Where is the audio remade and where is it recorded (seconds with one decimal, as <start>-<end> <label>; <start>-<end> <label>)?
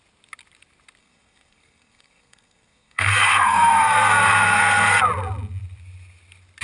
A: 0.0-1.0 recorded; 1.0-5.0 remade; 5.0-6.6 recorded